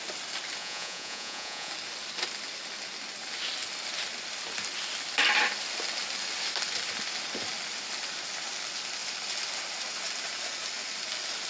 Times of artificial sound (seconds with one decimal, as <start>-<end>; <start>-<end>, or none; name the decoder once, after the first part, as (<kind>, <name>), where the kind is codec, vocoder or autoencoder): 0.6-1.7 (vocoder, Vocos)